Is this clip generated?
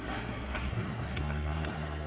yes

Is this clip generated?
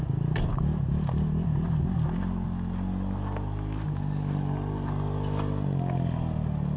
no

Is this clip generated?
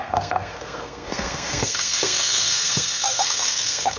yes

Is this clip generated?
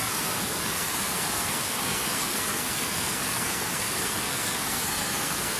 yes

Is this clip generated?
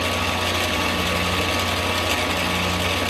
no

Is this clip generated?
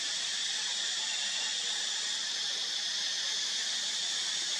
no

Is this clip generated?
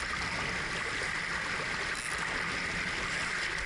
no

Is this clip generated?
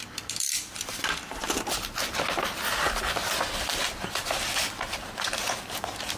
no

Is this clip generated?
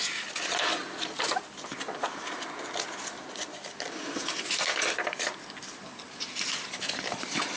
no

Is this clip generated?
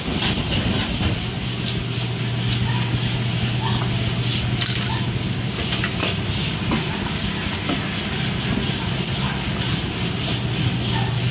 no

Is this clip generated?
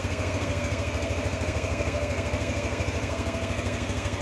yes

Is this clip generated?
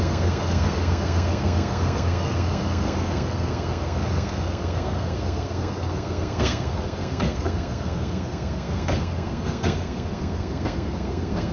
yes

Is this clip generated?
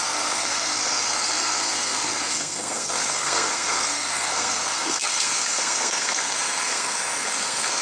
yes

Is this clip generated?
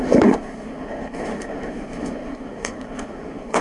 yes